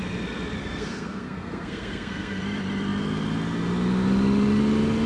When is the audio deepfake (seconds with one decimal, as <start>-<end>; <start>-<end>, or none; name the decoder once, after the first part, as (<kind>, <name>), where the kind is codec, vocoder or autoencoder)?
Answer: 0.6-2.4 (codec, SNAC)

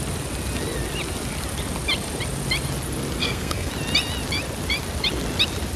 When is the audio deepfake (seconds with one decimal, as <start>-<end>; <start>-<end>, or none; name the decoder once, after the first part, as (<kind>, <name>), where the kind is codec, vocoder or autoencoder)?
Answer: 3.2-3.7 (codec, SNAC)

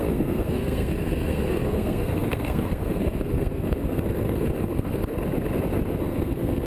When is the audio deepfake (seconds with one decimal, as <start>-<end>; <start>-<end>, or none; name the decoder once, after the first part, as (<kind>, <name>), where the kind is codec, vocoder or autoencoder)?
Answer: 0.0-5.1 (codec, SNAC); 6.0-6.7

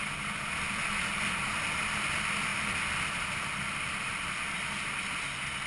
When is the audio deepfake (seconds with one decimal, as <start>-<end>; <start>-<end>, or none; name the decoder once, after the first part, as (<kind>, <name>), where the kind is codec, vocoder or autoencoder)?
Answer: none

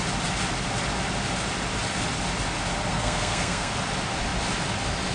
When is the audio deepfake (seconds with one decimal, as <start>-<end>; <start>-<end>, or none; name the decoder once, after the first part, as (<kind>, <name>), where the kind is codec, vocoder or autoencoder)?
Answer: 2.9-3.7 (codec, SNAC)